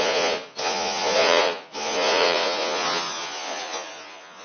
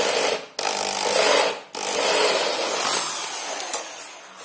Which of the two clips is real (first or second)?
second